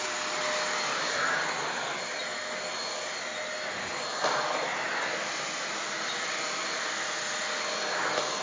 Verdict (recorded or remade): recorded